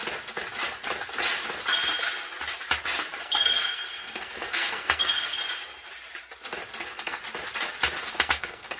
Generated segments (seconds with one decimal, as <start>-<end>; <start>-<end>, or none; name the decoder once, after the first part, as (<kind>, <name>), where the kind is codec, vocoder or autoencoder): 3.2-5.4 (codec, SNAC); 6.8-7.2; 8.0-8.8